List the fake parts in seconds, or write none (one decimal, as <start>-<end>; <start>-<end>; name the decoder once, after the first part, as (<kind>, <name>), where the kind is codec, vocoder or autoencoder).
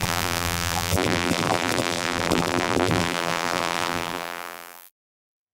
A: 0.0-5.5 (vocoder, BigVGAN v2)